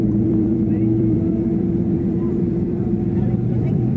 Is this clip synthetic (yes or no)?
yes